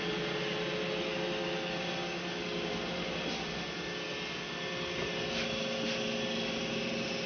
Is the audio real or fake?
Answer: real